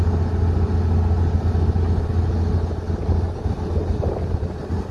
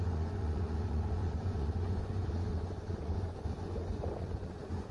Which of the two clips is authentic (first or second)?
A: first